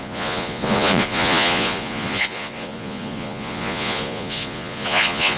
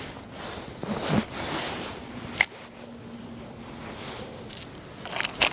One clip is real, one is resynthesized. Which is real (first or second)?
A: second